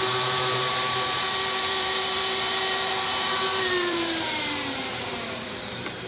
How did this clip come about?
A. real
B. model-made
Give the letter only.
B